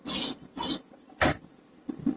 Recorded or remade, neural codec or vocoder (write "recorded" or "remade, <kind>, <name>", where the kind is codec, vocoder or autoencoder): recorded